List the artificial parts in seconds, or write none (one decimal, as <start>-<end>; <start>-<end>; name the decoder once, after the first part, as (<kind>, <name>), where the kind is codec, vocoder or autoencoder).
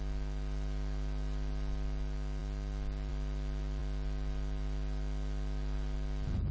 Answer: none